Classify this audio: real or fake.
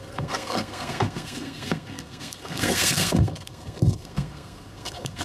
fake